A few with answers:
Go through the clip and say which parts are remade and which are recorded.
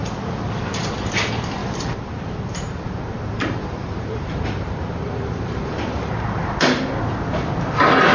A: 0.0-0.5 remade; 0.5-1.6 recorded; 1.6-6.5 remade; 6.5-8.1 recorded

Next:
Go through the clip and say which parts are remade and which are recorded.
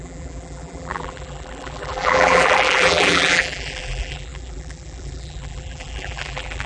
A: 0.0-6.7 remade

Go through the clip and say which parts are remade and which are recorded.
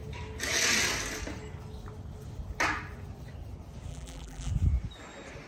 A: 0.0-3.9 recorded; 3.9-4.5 remade; 4.5-5.5 recorded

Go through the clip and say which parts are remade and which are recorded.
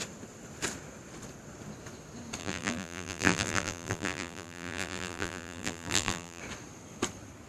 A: 0.0-2.4 recorded; 2.4-6.4 remade; 6.4-7.5 recorded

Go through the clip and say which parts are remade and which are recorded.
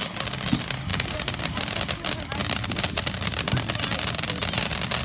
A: 0.0-0.9 recorded; 0.9-1.8 remade; 1.8-2.4 recorded; 2.4-3.4 remade; 3.4-5.0 recorded